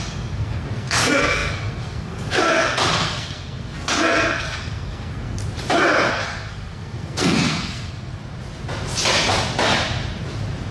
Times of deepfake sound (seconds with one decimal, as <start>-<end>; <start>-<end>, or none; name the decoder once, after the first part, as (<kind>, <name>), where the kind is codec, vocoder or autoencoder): 0.0-5.4 (codec, SNAC); 6.1-8.2